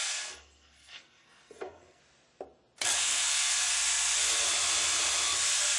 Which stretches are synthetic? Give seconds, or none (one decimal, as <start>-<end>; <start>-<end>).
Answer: 0.0-2.0; 2.9-3.7